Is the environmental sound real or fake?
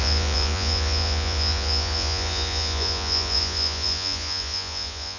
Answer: fake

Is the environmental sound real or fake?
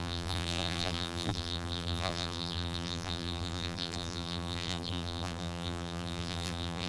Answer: fake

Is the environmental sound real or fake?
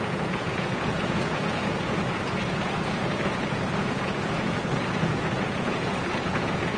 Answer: fake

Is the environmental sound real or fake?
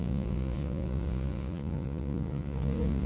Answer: fake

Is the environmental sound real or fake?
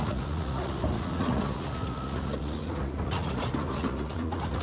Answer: fake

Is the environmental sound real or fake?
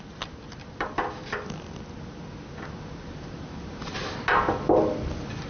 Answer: real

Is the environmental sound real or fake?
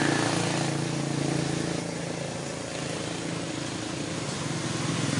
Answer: real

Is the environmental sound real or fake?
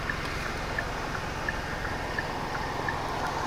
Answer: real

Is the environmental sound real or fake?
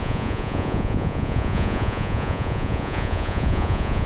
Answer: fake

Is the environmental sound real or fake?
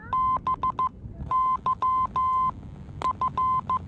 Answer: real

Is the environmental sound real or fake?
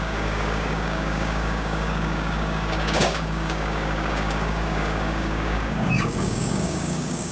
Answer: fake